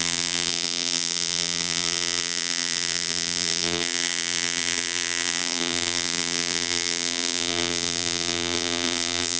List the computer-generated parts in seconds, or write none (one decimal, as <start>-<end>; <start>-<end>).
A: 0.0-9.4